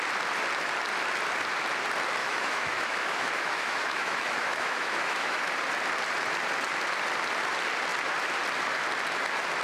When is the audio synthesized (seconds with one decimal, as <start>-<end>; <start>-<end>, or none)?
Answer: 2.2-5.5